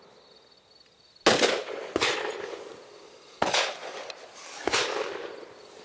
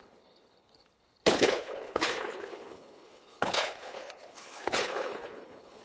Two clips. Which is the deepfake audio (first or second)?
second